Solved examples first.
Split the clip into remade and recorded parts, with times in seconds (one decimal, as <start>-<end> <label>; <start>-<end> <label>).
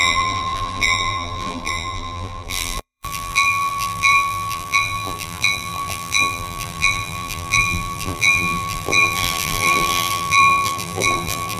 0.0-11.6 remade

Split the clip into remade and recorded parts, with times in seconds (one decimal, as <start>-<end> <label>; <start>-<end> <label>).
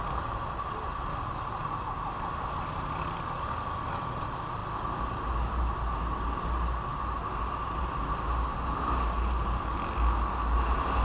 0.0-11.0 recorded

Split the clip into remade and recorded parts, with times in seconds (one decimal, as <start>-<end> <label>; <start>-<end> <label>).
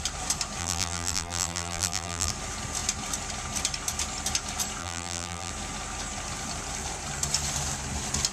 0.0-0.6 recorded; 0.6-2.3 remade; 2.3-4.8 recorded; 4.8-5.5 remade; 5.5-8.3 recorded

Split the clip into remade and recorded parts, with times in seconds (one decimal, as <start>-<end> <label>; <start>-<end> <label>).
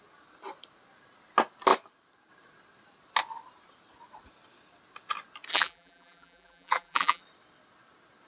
0.0-5.5 recorded; 5.5-7.2 remade; 7.2-8.3 recorded